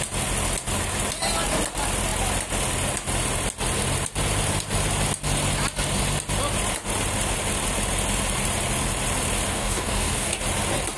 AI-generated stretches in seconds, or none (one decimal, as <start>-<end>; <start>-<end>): 9.5-10.4